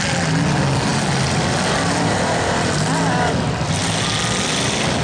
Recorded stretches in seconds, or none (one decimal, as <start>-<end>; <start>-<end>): 0.0-5.0